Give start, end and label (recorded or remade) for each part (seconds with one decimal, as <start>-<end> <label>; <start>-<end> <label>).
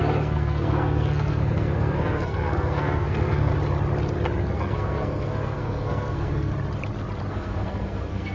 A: 0.0-3.5 remade; 3.5-4.4 recorded; 4.4-6.5 remade; 6.5-7.3 recorded; 7.3-8.3 remade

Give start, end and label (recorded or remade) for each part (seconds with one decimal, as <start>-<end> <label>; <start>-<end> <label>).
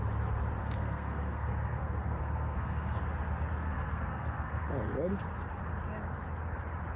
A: 0.0-0.6 recorded; 0.6-3.0 remade; 3.0-3.6 recorded; 3.6-4.7 remade; 4.7-7.0 recorded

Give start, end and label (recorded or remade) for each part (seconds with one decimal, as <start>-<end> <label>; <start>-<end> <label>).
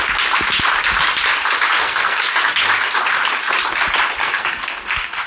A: 0.0-1.8 recorded; 1.8-2.3 remade; 2.3-4.2 recorded; 4.2-5.3 remade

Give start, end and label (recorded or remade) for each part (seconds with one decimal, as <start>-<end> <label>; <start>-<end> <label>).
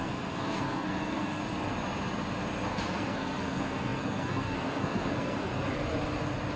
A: 0.0-1.4 remade; 1.4-2.7 recorded; 2.7-5.5 remade; 5.5-6.6 recorded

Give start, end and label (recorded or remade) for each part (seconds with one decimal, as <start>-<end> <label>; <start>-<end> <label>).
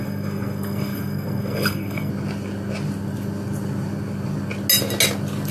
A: 0.0-2.1 remade; 2.1-5.5 recorded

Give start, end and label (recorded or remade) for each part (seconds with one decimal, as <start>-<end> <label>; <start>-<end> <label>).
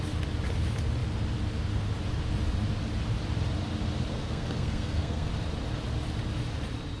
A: 0.0-4.1 recorded; 4.1-5.3 remade; 5.3-7.0 recorded